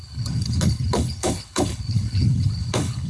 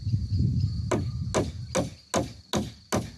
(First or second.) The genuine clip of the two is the second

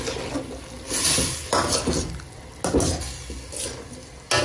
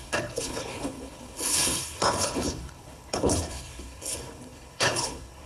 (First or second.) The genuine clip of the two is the first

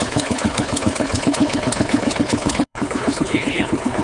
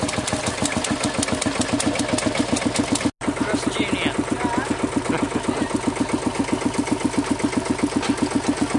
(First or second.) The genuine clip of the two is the second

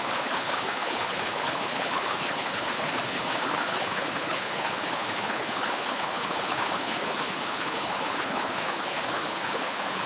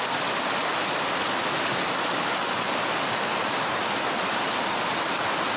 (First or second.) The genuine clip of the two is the second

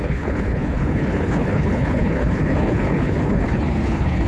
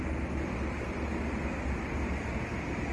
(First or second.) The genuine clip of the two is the second